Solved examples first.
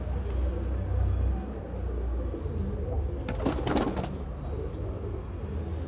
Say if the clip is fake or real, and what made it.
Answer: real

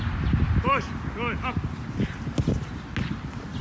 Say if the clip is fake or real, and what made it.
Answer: real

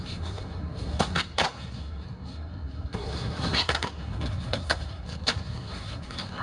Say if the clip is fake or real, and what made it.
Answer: fake, codec, SNAC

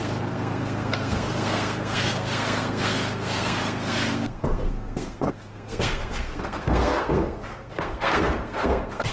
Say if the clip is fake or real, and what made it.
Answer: fake, codec, SNAC